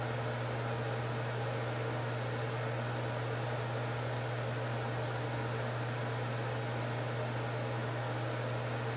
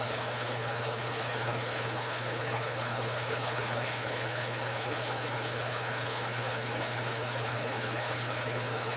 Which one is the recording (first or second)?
first